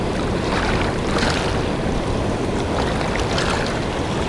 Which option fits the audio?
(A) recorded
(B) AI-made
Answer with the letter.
B